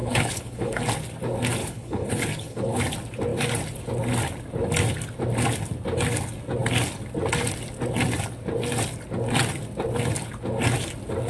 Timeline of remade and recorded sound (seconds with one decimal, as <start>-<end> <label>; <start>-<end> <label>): 0.0-0.9 remade; 0.9-1.6 recorded; 1.6-2.8 remade; 2.8-11.3 recorded